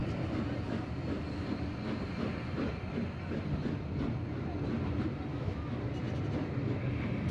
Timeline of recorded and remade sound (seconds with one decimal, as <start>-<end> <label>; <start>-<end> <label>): 0.0-5.3 recorded; 5.3-5.8 remade; 5.8-7.3 recorded